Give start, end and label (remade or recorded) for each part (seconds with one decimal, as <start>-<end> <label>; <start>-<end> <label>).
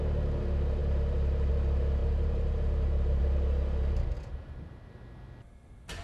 0.0-2.0 recorded; 2.0-3.2 remade; 3.2-4.3 recorded; 4.3-4.9 remade; 4.9-6.0 recorded